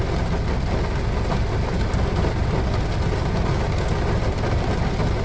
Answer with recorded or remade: recorded